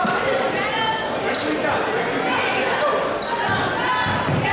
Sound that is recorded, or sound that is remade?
recorded